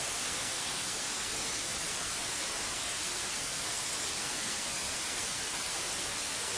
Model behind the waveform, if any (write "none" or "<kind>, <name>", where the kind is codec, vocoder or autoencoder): codec, SNAC